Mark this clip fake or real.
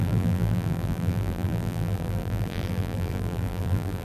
fake